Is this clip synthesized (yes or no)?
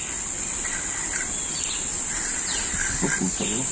no